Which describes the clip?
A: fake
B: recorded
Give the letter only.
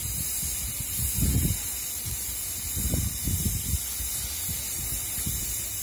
B